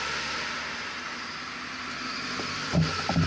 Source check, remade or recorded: recorded